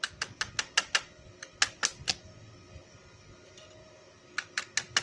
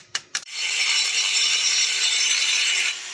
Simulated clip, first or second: second